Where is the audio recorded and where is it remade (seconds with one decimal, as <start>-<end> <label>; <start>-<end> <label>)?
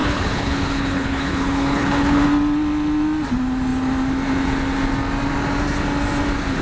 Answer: 0.0-2.2 remade; 2.2-6.6 recorded